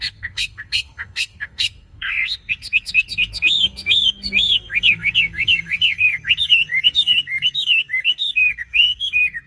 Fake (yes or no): yes